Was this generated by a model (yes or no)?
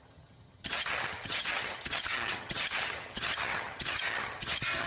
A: yes